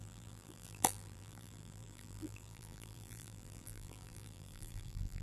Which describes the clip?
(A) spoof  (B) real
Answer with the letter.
A